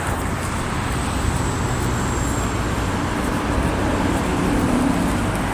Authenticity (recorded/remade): recorded